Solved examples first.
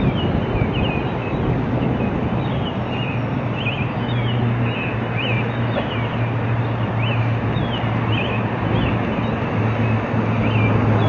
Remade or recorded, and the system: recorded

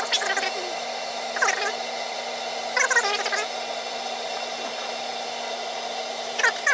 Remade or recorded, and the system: recorded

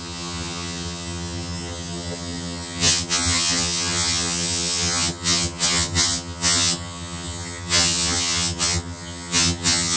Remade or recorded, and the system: remade, vocoder, HiFi-GAN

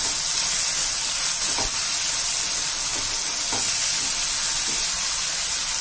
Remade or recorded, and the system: recorded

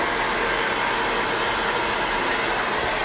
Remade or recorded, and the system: recorded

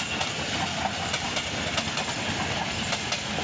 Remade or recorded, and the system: recorded